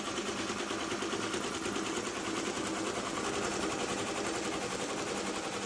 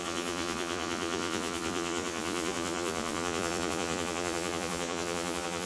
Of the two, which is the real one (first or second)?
first